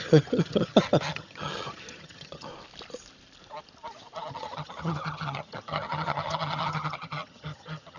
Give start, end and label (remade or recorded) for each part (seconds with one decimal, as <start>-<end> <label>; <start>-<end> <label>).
0.0-2.5 remade; 2.5-4.3 recorded; 4.3-8.0 remade